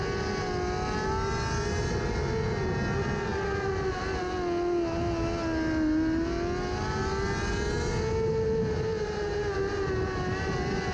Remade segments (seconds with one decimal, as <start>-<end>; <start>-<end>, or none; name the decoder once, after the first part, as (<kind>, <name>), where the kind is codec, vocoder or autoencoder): none